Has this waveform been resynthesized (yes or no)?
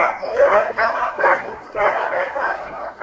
yes